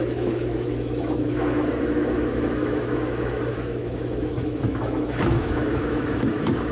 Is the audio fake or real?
fake